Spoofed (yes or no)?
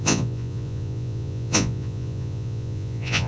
yes